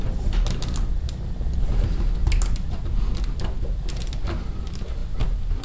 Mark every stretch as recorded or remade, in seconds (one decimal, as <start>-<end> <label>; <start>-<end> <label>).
0.0-5.6 recorded